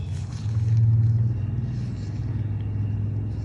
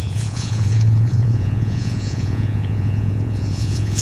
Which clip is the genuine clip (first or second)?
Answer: first